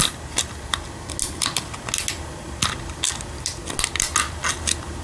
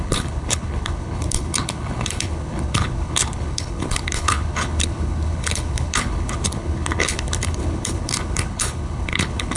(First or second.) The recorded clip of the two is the first